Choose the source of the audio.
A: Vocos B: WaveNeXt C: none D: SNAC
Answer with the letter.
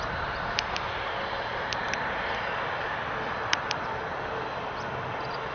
C